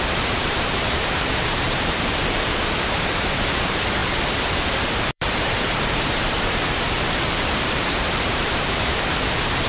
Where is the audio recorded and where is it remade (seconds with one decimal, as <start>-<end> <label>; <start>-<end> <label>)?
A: 0.0-9.7 remade

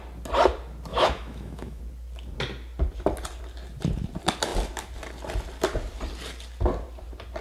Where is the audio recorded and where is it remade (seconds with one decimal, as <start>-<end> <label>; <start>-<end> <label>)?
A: 0.0-0.9 recorded; 0.9-1.8 remade; 1.8-7.4 recorded